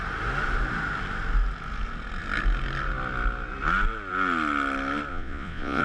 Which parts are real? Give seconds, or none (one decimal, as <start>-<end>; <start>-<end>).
0.0-5.1